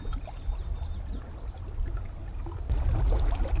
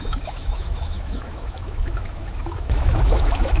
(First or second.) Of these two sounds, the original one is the first